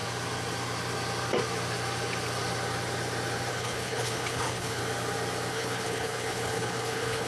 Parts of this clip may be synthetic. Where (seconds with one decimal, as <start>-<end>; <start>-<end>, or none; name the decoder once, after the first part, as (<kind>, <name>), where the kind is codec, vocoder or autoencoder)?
3.5-4.8 (codec, HILCodec); 5.5-7.3